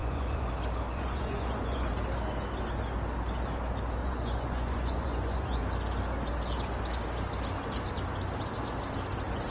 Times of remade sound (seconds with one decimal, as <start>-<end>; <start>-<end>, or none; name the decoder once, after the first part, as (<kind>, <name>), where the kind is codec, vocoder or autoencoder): 0.0-0.5 (vocoder, Vocos); 0.9-1.9; 4.0-5.6